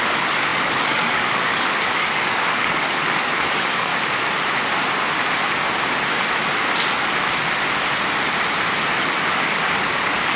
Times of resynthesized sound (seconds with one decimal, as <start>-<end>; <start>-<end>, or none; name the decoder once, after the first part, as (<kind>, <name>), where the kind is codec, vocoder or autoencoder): 0.0-3.9 (codec, DAC); 9.1-10.4